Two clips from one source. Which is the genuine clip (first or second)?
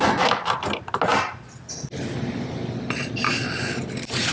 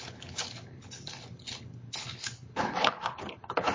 first